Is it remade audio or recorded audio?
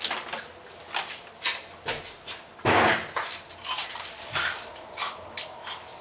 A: recorded